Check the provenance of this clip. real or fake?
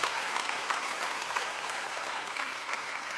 fake